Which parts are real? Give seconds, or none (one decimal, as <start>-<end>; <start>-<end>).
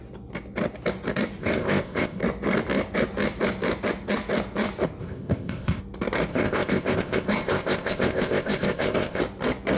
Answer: 0.0-1.4; 2.2-5.0; 5.8-6.3; 9.2-9.8